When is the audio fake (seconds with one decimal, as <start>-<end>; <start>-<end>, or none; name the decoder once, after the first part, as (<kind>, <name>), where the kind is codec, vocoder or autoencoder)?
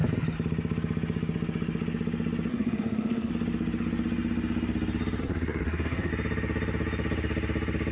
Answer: 2.5-3.3 (codec, SNAC); 5.2-6.1